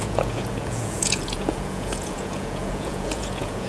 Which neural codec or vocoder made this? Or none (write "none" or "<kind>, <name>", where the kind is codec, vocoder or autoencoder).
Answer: vocoder, Vocos